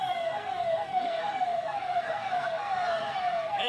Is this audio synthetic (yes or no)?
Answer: yes